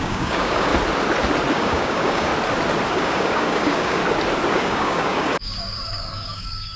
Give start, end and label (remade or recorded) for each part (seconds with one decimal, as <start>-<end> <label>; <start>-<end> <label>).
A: 0.0-0.7 remade; 0.7-1.5 recorded; 1.5-2.3 remade; 2.3-2.9 recorded; 2.9-4.0 remade; 4.0-4.5 recorded; 4.5-6.8 remade